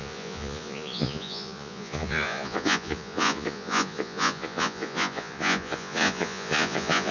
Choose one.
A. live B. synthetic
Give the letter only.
B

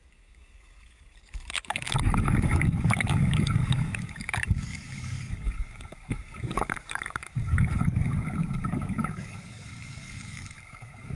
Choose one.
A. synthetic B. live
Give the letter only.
A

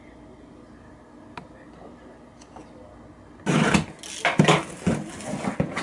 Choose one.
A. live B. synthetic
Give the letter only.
A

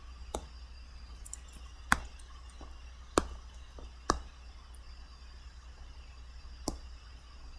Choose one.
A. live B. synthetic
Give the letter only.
A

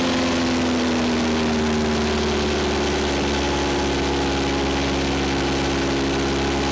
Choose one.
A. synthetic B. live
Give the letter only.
B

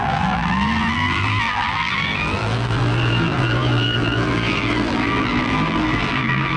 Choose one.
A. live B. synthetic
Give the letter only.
B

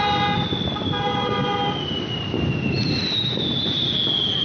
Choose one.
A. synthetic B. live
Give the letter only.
B